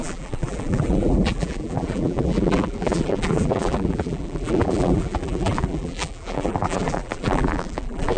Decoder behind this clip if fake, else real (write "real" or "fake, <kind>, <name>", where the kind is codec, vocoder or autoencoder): fake, vocoder, BigVGAN v2